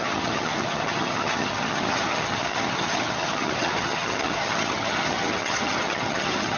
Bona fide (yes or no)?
no